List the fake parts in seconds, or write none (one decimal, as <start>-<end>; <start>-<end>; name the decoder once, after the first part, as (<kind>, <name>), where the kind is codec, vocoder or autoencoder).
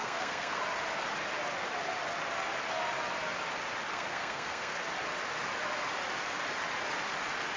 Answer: 0.0-0.6 (codec, SNAC); 3.9-4.8